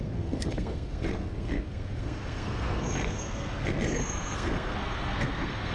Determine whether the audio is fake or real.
fake